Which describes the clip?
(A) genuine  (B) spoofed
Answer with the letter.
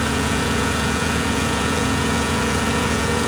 B